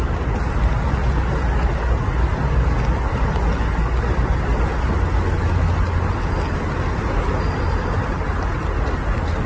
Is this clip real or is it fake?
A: real